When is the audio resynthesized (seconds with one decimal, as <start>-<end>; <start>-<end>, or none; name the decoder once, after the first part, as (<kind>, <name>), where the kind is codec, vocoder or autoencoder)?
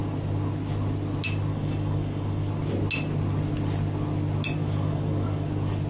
1.5-2.5 (codec, DAC); 4.6-5.5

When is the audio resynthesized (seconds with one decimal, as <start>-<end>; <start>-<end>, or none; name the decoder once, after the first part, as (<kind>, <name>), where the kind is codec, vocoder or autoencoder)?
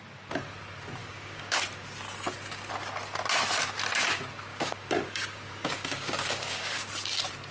1.0-1.6 (codec, DAC); 4.5-6.9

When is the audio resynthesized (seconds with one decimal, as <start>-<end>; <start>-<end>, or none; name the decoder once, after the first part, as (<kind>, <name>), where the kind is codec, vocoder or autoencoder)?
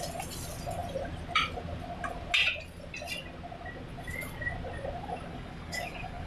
5.3-6.3 (codec, DAC)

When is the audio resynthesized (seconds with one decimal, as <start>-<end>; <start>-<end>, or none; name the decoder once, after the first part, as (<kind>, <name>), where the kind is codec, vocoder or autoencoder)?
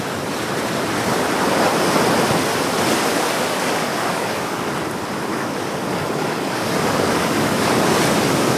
3.1-4.7 (codec, DAC); 5.3-7.7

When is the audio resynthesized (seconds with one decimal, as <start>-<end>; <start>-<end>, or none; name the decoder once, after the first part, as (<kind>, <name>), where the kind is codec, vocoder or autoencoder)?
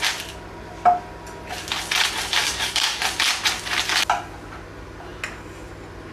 2.4-3.0 (codec, DAC)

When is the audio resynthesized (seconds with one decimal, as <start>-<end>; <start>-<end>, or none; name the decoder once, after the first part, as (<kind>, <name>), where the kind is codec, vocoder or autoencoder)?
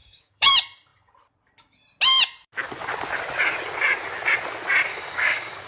0.0-0.5 (codec, DAC); 4.9-5.7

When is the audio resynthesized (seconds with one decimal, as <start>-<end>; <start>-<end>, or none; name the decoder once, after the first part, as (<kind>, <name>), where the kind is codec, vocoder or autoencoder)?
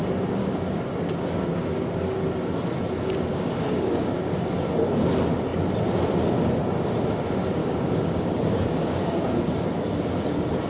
0.4-2.2 (codec, DAC); 3.3-4.2; 7.6-9.9